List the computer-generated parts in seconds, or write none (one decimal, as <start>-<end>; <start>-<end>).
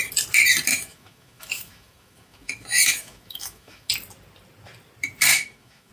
0.7-3.9; 5.3-5.9